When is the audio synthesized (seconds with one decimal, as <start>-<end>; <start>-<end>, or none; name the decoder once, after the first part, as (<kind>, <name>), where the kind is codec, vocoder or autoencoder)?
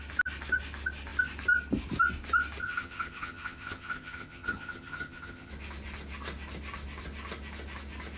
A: 2.6-5.5 (vocoder, HiFi-GAN)